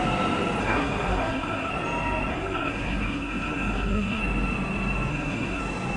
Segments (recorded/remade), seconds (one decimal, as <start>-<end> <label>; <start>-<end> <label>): 0.0-0.6 recorded; 0.6-1.7 remade; 1.7-2.3 recorded; 2.3-4.2 remade; 4.2-5.1 recorded; 5.1-5.6 remade; 5.6-6.0 recorded